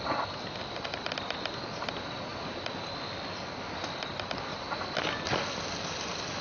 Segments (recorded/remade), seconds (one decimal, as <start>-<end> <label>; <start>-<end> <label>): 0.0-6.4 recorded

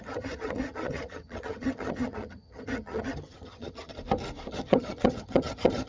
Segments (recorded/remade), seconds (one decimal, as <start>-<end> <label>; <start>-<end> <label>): 0.0-4.0 remade; 4.0-4.5 recorded; 4.5-5.9 remade

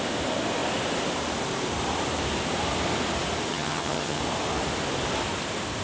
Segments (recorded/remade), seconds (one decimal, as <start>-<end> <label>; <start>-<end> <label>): 0.0-3.5 recorded; 3.5-4.2 remade; 4.2-5.8 recorded

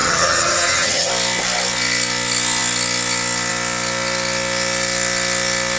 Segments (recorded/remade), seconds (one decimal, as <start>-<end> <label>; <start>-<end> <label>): 0.0-1.1 remade; 1.1-5.8 recorded

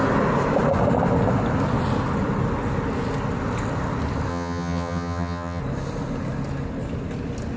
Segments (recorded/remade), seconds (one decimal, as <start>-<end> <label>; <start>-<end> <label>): 0.0-4.3 recorded; 4.3-5.6 remade; 5.6-7.6 recorded

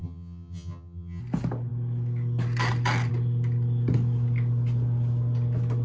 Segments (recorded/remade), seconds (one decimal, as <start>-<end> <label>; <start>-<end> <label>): 0.0-1.2 remade; 1.2-5.8 recorded

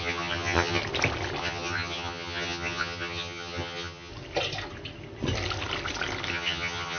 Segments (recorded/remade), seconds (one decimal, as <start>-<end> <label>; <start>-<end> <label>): 0.0-0.8 remade; 0.8-1.4 recorded; 1.4-4.1 remade; 4.1-6.3 recorded; 6.3-7.0 remade